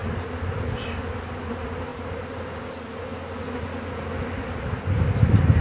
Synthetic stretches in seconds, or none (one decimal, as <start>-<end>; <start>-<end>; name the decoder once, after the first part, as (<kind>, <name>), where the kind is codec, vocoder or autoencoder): none